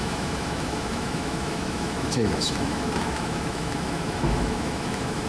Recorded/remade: remade